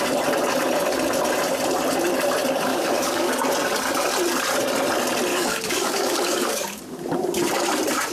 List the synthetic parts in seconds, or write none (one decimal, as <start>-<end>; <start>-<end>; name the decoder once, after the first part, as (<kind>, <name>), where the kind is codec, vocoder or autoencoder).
2.7-3.3 (codec, DAC); 5.3-6.8